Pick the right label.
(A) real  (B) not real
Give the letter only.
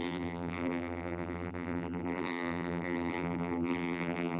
B